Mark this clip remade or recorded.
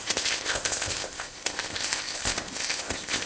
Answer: remade